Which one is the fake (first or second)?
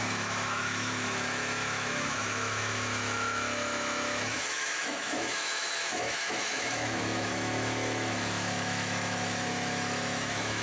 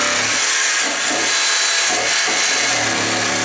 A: first